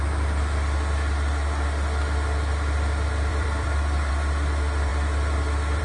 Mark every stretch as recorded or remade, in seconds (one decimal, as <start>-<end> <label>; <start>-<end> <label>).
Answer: 0.0-3.3 recorded; 3.3-4.1 remade; 4.1-5.8 recorded